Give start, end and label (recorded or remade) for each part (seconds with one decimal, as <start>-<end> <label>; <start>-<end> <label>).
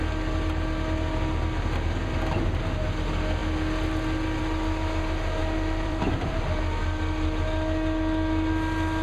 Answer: 0.0-5.4 recorded; 5.4-6.4 remade; 6.4-9.0 recorded